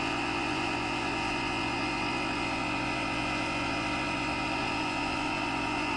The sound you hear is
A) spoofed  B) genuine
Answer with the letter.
A